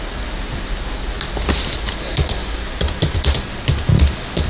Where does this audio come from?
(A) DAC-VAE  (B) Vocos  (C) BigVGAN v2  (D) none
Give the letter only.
D